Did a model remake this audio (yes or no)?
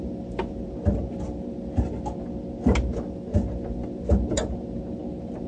no